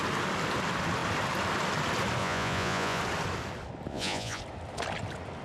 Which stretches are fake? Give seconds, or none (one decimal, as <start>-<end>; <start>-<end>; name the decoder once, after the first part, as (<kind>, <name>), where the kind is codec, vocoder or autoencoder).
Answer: 2.2-3.0 (vocoder, Vocos); 3.9-4.4